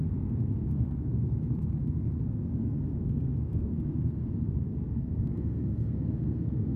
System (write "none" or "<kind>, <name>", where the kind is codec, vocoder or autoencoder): codec, SNAC